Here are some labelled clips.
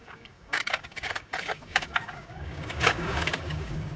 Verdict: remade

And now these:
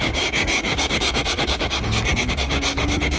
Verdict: remade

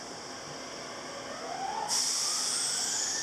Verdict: recorded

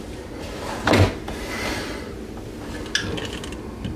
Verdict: recorded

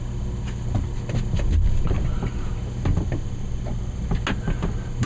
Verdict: recorded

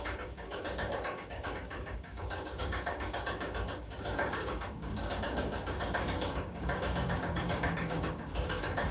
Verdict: remade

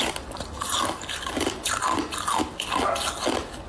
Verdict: recorded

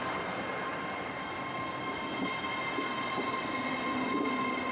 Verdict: recorded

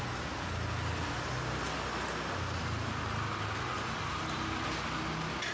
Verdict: recorded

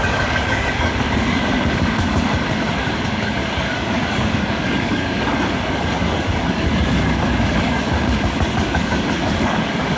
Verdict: remade